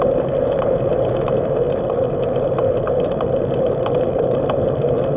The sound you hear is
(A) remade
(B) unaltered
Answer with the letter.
B